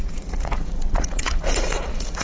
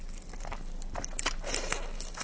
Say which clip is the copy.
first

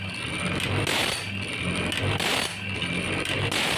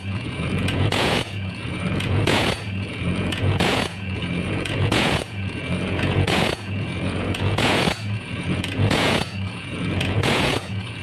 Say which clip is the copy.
second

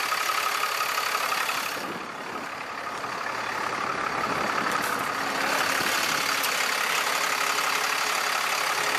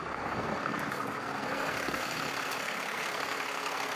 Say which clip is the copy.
second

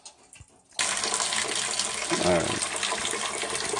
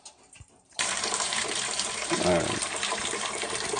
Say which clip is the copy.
second